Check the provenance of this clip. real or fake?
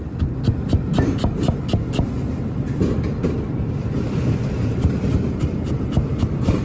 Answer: real